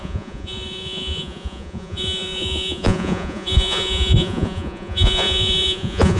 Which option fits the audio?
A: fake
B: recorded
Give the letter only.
A